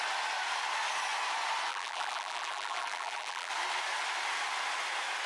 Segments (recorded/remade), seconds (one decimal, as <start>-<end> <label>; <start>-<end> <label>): 0.0-1.7 recorded; 1.7-3.5 remade; 3.5-5.3 recorded